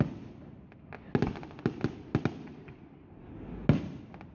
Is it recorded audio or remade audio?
recorded